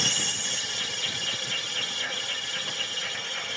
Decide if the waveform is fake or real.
real